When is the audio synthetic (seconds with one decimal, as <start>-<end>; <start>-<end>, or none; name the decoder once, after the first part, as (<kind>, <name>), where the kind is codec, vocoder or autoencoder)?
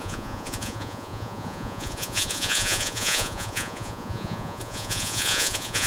0.0-5.9 (vocoder, Vocos)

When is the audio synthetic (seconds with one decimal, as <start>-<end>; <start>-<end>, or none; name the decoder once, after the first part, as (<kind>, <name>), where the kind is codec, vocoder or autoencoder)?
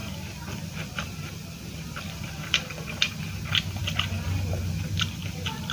0.0-3.2 (vocoder, BigVGAN v2); 3.8-4.5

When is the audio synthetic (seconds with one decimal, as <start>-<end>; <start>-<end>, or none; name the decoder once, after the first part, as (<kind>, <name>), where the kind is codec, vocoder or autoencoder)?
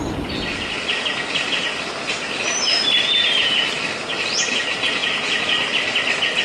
none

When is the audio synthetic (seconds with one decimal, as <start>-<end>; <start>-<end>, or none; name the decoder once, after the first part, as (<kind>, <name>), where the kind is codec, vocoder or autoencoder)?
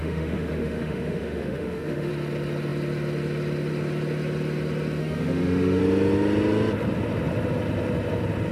0.0-2.1 (autoencoder, DAC-VAE); 5.0-5.8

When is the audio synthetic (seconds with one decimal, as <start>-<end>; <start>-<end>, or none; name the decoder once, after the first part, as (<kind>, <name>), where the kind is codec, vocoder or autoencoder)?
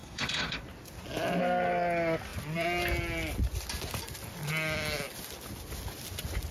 0.0-0.6 (codec, SNAC)